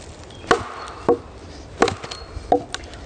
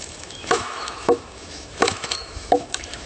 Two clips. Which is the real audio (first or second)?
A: first